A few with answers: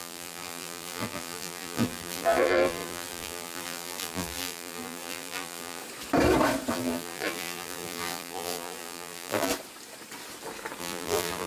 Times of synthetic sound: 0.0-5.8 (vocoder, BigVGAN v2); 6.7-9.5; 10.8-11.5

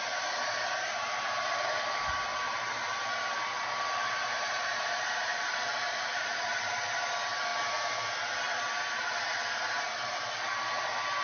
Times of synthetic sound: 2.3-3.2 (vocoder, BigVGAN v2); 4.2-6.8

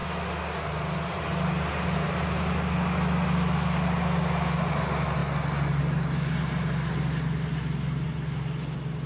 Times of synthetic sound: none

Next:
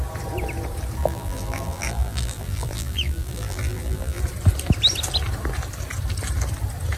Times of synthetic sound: 1.0-4.2 (vocoder, BigVGAN v2)

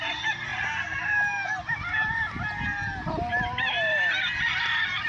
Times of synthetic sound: 3.3-5.1 (vocoder, BigVGAN v2)

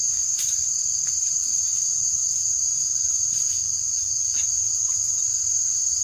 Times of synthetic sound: none

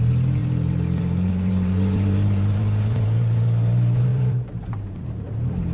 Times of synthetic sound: 0.0-5.7 (vocoder, BigVGAN v2)

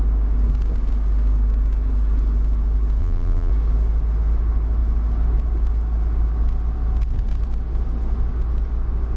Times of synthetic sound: 3.0-3.5 (vocoder, BigVGAN v2)